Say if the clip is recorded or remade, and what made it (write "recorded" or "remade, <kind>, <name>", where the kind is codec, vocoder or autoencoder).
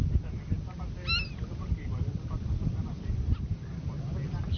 recorded